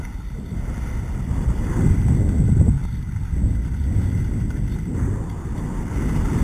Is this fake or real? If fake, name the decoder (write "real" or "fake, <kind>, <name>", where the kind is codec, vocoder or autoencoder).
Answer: real